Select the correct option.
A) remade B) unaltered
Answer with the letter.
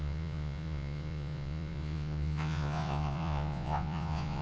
A